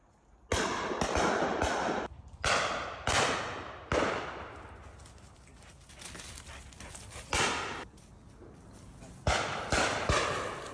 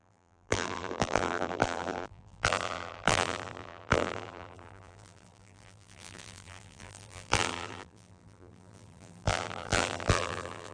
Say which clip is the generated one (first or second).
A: second